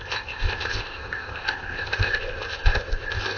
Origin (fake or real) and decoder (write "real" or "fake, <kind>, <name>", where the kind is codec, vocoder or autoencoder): fake, codec, ZipCodec